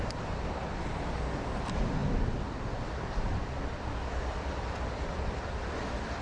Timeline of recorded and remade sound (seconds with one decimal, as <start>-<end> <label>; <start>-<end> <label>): 0.0-6.2 recorded